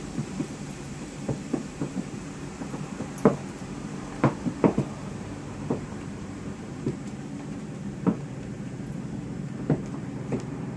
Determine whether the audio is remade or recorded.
remade